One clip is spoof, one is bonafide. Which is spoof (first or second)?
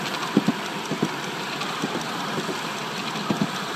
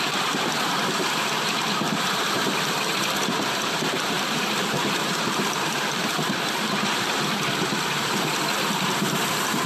second